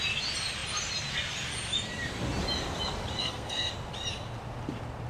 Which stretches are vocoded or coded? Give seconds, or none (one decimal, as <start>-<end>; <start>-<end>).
3.2-3.7